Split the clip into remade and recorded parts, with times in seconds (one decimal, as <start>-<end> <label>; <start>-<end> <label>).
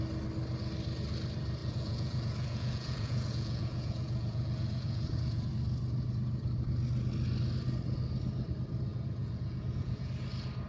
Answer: 0.0-1.6 recorded; 1.6-5.5 remade; 5.5-8.9 recorded; 8.9-10.1 remade; 10.1-10.7 recorded